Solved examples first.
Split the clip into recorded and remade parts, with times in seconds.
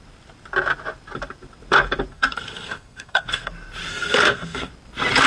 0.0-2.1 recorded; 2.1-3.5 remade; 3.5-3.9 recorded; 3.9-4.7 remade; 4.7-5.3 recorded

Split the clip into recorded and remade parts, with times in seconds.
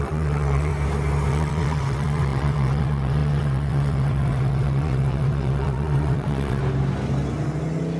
0.0-0.7 remade; 0.7-1.3 recorded; 1.3-6.6 remade; 6.6-8.0 recorded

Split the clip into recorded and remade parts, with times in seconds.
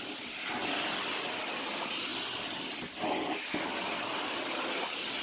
0.0-5.2 recorded